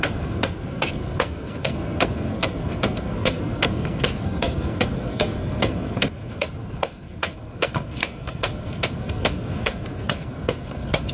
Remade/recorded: remade